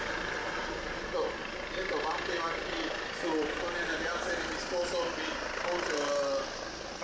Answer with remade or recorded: recorded